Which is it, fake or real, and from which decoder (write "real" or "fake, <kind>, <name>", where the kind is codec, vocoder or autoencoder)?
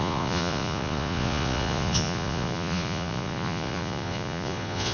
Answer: fake, vocoder, Vocos